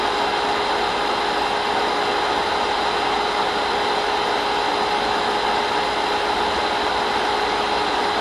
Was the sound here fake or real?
real